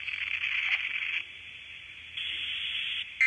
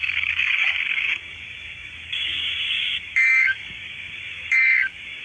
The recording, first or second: first